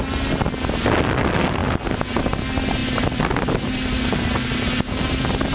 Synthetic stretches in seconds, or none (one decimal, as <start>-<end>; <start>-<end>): none